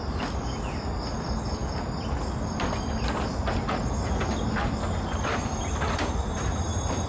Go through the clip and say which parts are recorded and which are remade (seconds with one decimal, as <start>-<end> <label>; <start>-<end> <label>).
0.0-7.1 recorded